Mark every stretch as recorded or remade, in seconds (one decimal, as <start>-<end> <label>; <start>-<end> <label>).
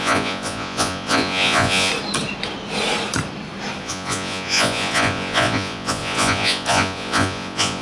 0.0-1.9 remade; 1.9-3.8 recorded; 3.8-7.8 remade